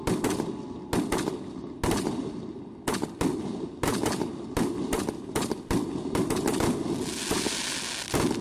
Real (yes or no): yes